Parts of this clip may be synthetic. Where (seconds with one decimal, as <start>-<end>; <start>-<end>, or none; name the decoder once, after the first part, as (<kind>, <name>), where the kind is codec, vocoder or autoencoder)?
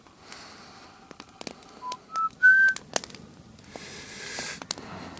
none